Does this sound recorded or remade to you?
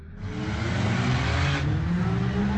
recorded